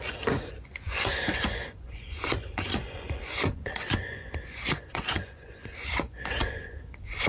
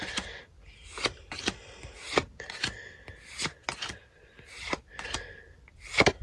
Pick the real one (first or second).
second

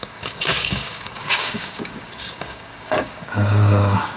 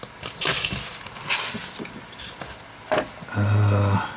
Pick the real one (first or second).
second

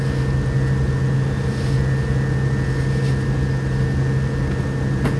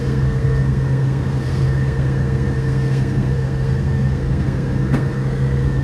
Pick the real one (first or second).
first